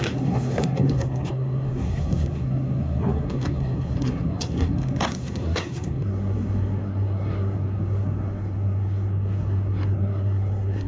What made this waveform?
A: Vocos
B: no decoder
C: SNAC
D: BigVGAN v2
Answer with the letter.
C